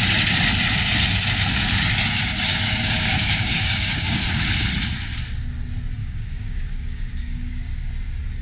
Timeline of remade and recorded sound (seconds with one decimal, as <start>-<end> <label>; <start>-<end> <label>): 0.0-2.5 recorded; 2.5-4.3 remade; 4.3-6.0 recorded; 6.0-7.9 remade; 7.9-8.4 recorded